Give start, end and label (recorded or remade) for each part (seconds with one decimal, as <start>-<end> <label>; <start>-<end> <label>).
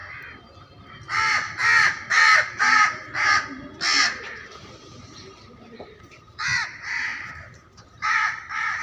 0.0-4.2 recorded; 4.2-8.8 remade